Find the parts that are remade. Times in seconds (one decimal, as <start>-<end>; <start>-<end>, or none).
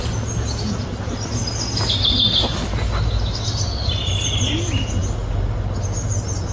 none